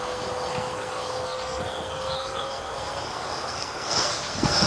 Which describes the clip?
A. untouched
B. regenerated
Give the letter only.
B